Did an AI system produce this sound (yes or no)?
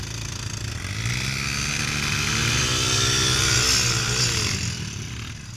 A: no